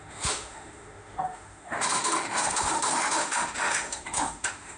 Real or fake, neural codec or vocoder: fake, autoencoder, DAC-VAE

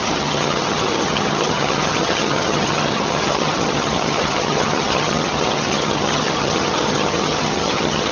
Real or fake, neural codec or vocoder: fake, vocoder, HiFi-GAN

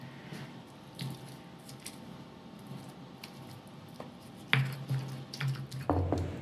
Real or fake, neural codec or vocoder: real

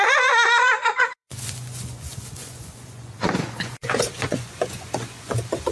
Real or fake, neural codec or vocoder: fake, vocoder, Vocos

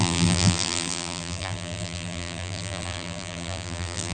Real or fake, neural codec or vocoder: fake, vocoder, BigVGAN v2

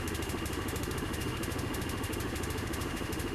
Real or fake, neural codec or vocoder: fake, autoencoder, DAC-VAE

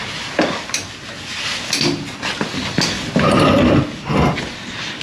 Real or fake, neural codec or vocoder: real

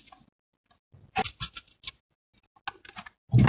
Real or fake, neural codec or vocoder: real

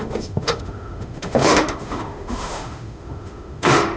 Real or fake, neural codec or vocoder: fake, autoencoder, DAC-VAE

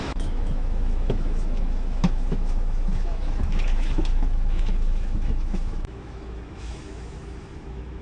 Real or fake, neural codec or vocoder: fake, autoencoder, DAC-VAE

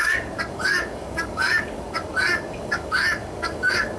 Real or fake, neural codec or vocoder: fake, codec, DAC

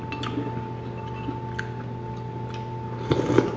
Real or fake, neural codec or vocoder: real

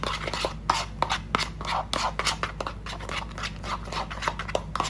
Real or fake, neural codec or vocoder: real